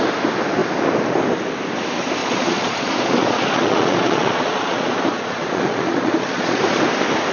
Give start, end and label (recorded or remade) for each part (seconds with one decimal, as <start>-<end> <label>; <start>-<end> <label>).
0.0-2.2 recorded; 2.2-6.6 remade; 6.6-7.3 recorded